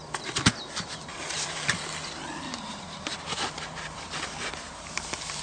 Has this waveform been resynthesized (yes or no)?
yes